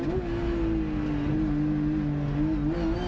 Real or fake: real